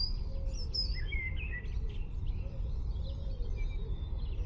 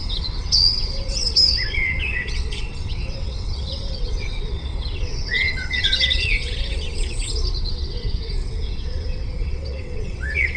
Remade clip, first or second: second